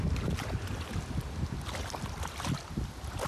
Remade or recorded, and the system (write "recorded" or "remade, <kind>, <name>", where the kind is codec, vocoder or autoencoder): recorded